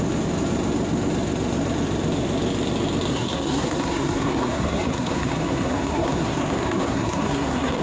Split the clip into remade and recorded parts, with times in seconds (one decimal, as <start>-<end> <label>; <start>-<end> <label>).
0.0-3.1 recorded; 3.1-7.8 remade